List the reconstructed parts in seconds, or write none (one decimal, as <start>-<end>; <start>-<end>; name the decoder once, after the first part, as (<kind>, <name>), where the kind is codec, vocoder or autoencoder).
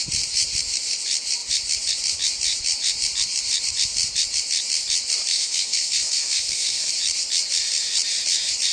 5.3-6.9 (codec, SNAC)